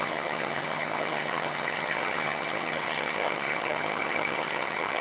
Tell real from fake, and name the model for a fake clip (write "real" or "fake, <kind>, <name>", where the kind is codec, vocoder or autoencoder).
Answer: fake, vocoder, HiFi-GAN